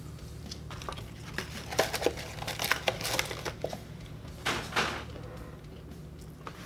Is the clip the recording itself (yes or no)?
yes